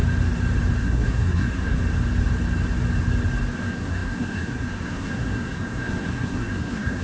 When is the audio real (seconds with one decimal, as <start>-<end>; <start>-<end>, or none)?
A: 0.0-0.8; 1.8-3.6